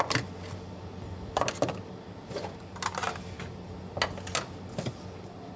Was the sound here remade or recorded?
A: recorded